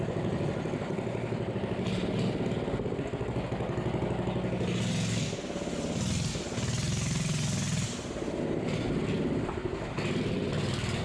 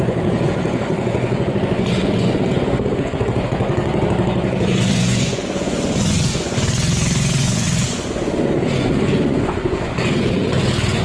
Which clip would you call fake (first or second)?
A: second